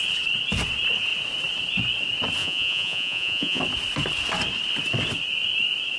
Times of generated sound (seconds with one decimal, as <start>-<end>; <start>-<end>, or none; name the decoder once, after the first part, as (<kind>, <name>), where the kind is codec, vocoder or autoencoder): 2.4-3.6 (vocoder, Vocos)